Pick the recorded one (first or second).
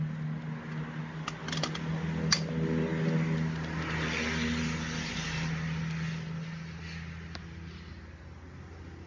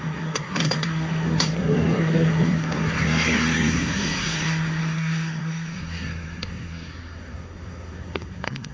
first